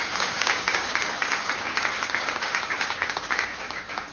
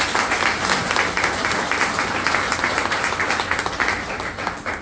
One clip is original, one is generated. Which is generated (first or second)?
first